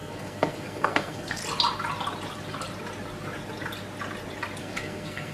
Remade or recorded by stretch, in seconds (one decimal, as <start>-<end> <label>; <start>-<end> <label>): 0.0-1.4 remade; 1.4-4.6 recorded; 4.6-5.3 remade